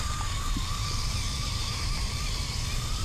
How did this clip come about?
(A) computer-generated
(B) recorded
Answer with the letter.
A